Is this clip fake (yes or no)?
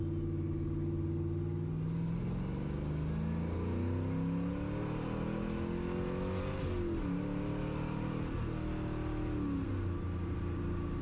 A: no